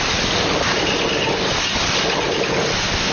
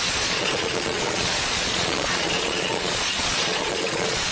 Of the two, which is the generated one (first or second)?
second